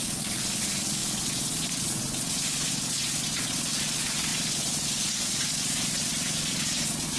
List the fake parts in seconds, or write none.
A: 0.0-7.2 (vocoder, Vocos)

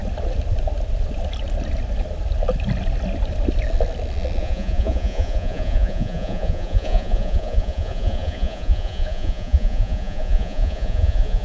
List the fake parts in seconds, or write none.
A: 4.4-11.4 (vocoder, Vocos)

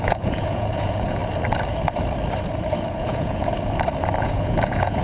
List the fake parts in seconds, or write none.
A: 0.0-1.2 (vocoder, Vocos); 2.9-3.5; 4.2-5.0

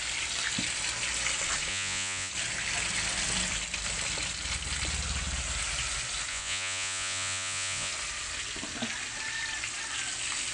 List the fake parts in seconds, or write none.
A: 1.7-2.3 (vocoder, Vocos); 6.3-7.9

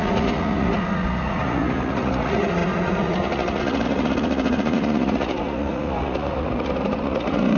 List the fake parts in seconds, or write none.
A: 0.0-7.6 (vocoder, Vocos)

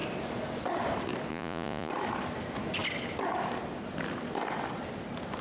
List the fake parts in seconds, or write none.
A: 1.3-1.9 (vocoder, Vocos)

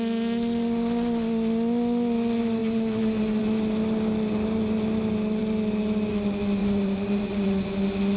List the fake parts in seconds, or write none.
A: 6.6-7.7 (vocoder, Vocos)